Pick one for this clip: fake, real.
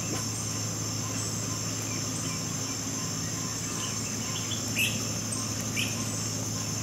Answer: real